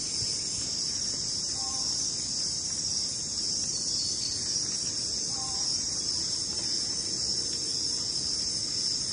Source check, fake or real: real